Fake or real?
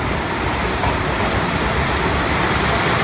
real